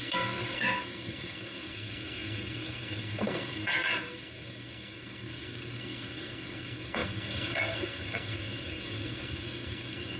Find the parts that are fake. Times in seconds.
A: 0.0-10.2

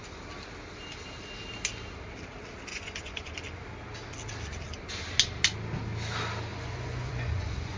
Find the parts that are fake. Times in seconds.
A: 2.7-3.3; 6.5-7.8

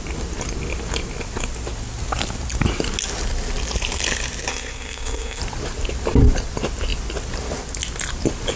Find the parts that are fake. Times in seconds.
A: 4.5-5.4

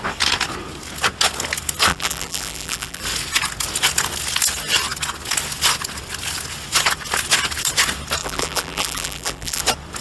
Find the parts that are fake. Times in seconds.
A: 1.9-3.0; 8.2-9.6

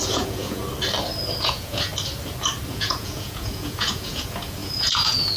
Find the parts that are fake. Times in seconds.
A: 0.0-0.6; 1.4-1.9; 2.7-5.4